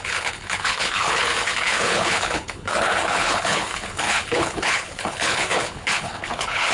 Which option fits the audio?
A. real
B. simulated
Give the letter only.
B